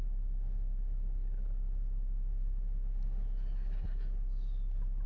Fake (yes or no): no